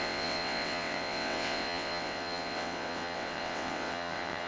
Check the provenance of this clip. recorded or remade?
remade